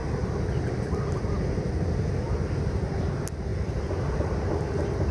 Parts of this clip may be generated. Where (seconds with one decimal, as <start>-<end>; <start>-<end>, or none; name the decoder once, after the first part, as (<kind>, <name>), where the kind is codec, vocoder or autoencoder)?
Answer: 3.5-4.3 (vocoder, BigVGAN v2)